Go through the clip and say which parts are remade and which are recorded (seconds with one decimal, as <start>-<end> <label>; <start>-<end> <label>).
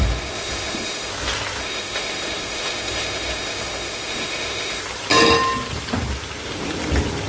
0.0-1.1 remade; 1.1-1.6 recorded; 1.6-4.8 remade; 4.8-7.3 recorded